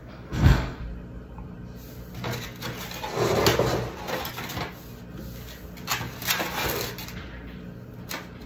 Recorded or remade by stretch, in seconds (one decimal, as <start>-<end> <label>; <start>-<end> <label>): 0.0-0.8 remade; 0.8-8.5 recorded